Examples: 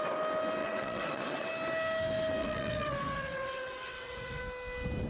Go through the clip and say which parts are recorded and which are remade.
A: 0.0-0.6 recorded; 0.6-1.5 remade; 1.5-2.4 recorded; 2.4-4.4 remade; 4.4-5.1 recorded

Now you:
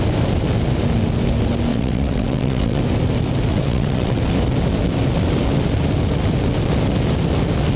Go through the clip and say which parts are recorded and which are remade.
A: 0.0-1.7 recorded; 1.7-2.8 remade; 2.8-3.5 recorded; 3.5-4.2 remade; 4.2-7.8 recorded

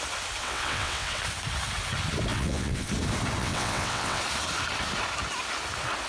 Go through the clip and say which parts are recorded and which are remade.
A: 0.0-0.4 recorded; 0.4-1.2 remade; 1.2-2.3 recorded; 2.3-2.9 remade; 2.9-3.4 recorded; 3.4-4.2 remade; 4.2-6.1 recorded

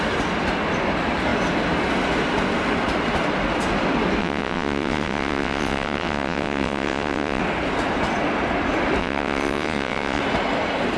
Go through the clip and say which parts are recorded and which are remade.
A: 0.0-4.2 recorded; 4.2-7.4 remade; 7.4-9.0 recorded; 9.0-10.2 remade; 10.2-11.0 recorded

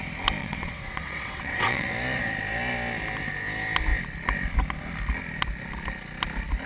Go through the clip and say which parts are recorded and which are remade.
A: 0.0-0.4 recorded; 0.4-1.9 remade; 1.9-6.7 recorded

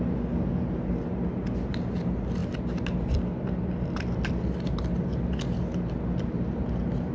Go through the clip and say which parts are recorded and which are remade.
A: 0.0-7.1 recorded

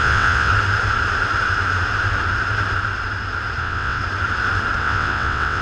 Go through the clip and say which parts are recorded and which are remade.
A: 0.0-0.5 remade; 0.5-3.6 recorded; 3.6-4.0 remade; 4.0-4.8 recorded; 4.8-5.6 remade

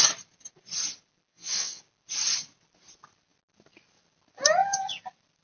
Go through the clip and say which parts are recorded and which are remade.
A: 0.0-1.3 recorded; 1.3-1.8 remade; 1.8-5.4 recorded